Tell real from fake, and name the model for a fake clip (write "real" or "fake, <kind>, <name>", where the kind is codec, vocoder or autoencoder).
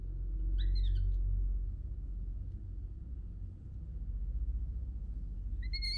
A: real